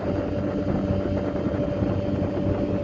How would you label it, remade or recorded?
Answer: recorded